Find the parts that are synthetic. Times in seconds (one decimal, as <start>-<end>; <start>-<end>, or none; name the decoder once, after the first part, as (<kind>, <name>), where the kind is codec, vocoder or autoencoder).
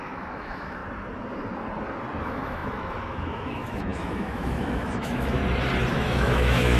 0.0-0.8 (autoencoder, DAC-VAE); 2.2-5.4; 5.9-6.8